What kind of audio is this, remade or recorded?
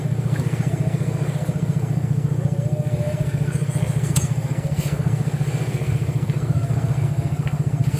remade